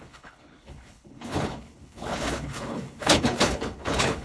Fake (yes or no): yes